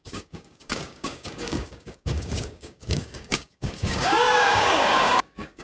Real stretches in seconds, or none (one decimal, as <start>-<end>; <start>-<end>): none